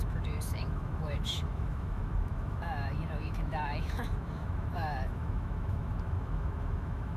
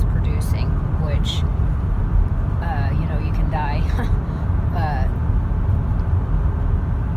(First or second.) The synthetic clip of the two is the first